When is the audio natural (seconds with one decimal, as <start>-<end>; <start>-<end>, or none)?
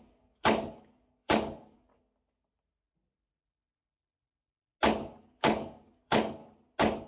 1.9-5.2; 6.4-7.1